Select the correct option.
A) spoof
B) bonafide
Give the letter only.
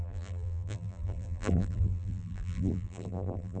A